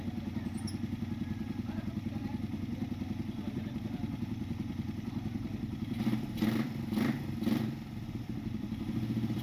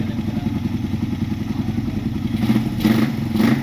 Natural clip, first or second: second